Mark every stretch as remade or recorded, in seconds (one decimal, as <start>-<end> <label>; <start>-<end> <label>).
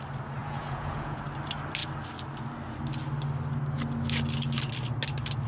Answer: 0.0-0.4 recorded; 0.4-1.2 remade; 1.2-5.5 recorded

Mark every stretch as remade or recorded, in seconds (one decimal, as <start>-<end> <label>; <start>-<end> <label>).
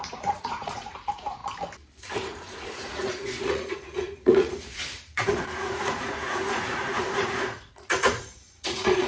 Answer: 0.0-1.4 remade; 1.4-2.0 recorded; 2.0-9.1 remade